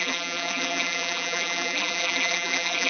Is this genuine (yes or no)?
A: no